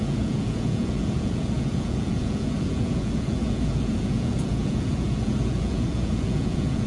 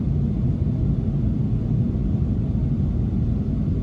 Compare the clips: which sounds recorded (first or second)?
second